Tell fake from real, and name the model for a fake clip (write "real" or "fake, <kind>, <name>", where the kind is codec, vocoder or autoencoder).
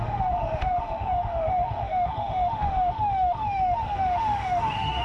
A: fake, autoencoder, DAC-VAE